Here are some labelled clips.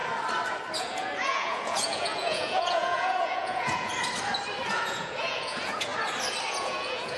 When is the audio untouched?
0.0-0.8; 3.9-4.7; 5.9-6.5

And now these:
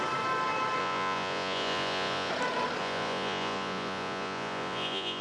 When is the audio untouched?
0.0-0.8; 2.3-2.8

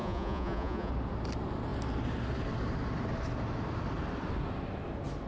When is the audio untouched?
0.9-5.3

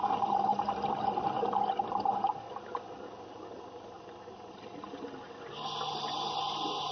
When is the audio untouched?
0.0-6.9

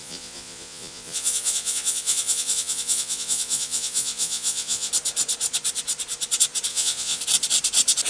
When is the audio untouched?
4.9-6.7; 7.2-8.1

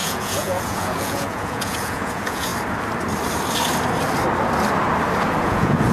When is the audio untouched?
2.5-5.4